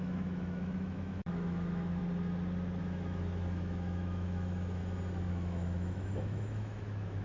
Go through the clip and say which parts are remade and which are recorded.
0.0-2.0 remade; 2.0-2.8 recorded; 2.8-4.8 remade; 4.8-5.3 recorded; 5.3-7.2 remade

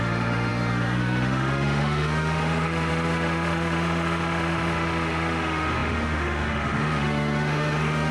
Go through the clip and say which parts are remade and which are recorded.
0.0-8.1 remade